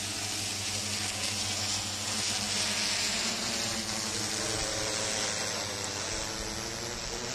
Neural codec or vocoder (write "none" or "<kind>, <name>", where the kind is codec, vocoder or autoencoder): none